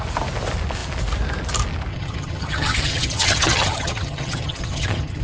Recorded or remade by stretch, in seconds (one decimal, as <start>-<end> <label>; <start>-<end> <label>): 0.0-1.9 recorded; 1.9-5.2 remade

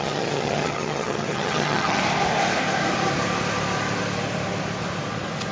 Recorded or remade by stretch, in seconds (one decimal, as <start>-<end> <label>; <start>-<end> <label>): 0.0-2.0 remade; 2.0-5.5 recorded